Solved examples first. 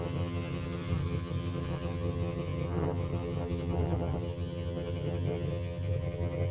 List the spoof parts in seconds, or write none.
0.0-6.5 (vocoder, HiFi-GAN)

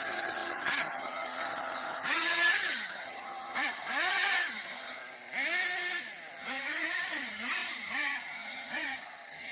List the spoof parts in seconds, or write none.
0.0-5.0 (vocoder, HiFi-GAN); 6.4-9.5

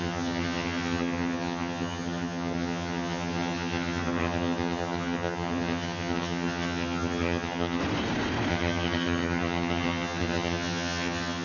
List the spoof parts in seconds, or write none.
0.0-7.8 (vocoder, HiFi-GAN); 8.5-11.4

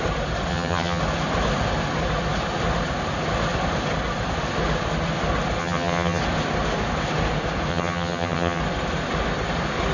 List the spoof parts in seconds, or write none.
0.5-1.0 (vocoder, HiFi-GAN); 5.6-6.2; 7.7-8.6